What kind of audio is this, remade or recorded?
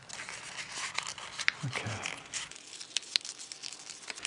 recorded